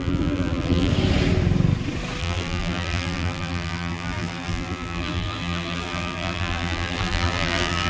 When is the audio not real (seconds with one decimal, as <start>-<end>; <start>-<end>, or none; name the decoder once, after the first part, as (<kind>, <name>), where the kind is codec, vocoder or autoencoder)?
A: 0.0-0.9 (vocoder, BigVGAN v2); 2.2-7.9